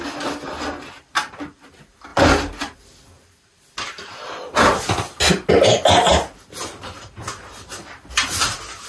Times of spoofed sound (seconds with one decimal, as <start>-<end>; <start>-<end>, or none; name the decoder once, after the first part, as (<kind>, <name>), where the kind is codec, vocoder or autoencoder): none